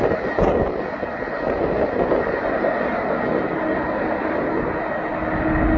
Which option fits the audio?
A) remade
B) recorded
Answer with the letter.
B